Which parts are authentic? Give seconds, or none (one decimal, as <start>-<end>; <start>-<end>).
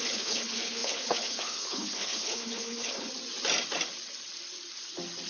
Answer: 3.1-5.3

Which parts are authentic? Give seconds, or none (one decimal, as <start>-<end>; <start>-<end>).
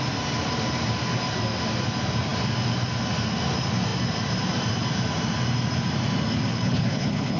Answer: 0.0-6.5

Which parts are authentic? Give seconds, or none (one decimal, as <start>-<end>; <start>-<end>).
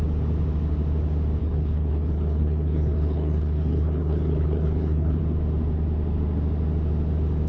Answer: 0.0-1.4; 5.2-7.5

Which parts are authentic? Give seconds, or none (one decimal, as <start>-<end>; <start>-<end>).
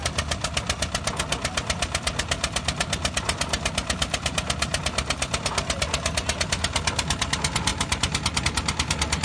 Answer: 0.0-9.2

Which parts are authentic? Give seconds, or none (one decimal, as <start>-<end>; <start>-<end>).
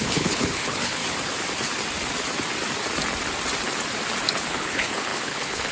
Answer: 1.0-4.3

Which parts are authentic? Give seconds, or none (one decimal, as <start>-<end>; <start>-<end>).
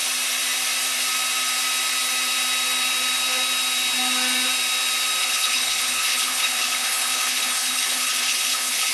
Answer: 0.0-5.2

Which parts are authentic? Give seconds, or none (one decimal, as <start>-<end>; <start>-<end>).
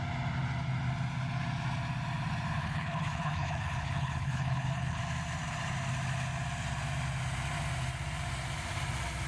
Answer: 0.0-2.6; 5.0-9.3